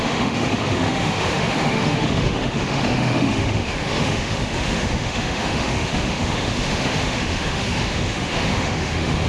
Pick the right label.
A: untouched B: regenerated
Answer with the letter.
B